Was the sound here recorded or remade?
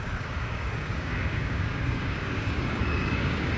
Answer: remade